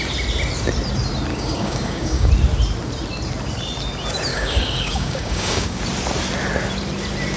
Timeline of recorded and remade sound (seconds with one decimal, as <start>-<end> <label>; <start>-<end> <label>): 0.0-1.3 recorded; 1.3-2.3 remade; 2.3-4.3 recorded; 4.3-5.8 remade; 5.8-7.4 recorded